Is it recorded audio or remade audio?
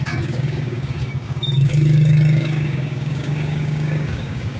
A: remade